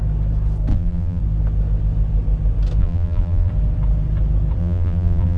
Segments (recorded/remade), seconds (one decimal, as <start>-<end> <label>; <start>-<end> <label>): 0.0-0.7 recorded; 0.7-1.2 remade; 1.2-2.8 recorded; 2.8-3.5 remade; 3.5-4.6 recorded; 4.6-5.4 remade